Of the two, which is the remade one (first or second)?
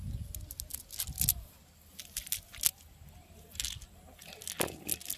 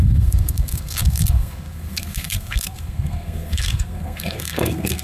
second